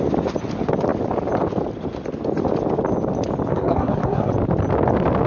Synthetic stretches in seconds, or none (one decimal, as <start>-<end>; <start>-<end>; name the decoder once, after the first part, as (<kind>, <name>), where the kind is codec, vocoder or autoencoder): 3.5-4.3 (codec, SNAC)